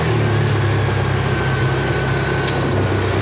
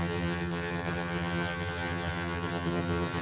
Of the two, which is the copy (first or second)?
second